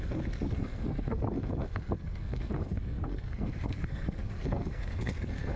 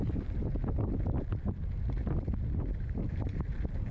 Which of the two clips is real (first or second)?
second